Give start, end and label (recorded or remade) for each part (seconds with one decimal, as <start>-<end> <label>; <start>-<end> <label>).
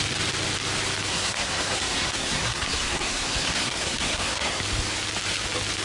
0.0-1.1 recorded; 1.1-4.6 remade; 4.6-5.8 recorded